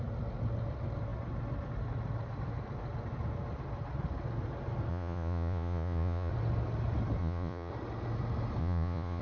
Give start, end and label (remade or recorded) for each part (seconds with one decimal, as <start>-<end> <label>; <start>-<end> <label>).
0.0-4.9 recorded; 4.9-6.3 remade; 6.3-7.2 recorded; 7.2-7.7 remade; 7.7-8.6 recorded; 8.6-9.2 remade